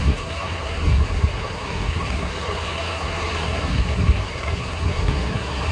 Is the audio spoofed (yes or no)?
yes